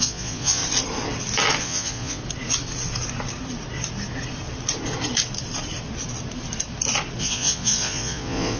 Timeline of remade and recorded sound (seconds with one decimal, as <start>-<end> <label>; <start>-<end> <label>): 0.0-0.6 remade; 0.6-1.6 recorded; 1.6-2.2 remade; 2.2-7.2 recorded; 7.2-8.6 remade